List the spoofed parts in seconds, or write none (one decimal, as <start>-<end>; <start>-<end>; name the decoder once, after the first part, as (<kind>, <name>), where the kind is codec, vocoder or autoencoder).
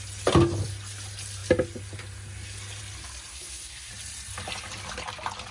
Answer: 3.3-3.9 (codec, SNAC)